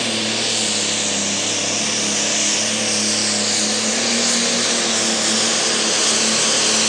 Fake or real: real